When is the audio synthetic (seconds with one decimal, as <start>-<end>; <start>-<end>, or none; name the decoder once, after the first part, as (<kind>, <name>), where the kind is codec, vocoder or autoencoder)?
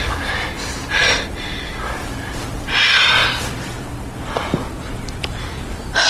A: 3.2-5.6 (vocoder, BigVGAN v2)